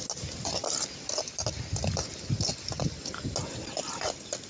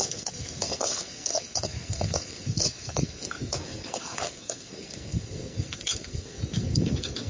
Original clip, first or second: first